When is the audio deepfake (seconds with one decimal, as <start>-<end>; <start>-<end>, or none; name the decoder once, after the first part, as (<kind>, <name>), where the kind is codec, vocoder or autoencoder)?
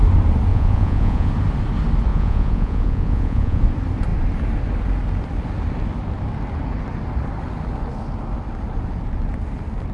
0.5-1.3 (vocoder, Vocos); 2.1-3.6